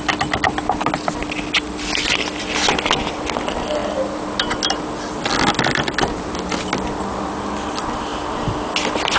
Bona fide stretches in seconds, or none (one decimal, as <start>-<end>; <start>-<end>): 0.0-9.2

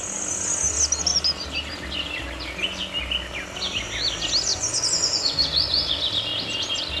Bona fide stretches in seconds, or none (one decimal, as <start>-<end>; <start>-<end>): 0.0-4.5; 6.1-7.0

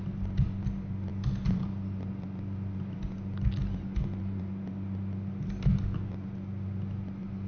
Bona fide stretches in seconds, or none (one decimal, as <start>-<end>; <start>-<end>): 0.0-7.5